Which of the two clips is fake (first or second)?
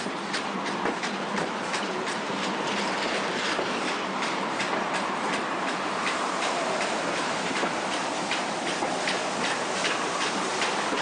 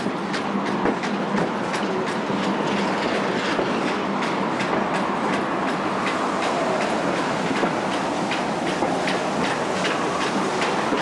first